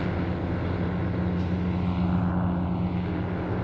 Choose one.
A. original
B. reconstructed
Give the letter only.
A